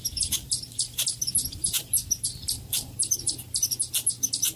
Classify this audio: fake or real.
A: fake